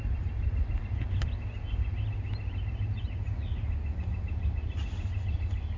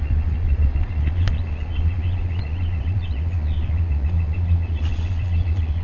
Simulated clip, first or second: second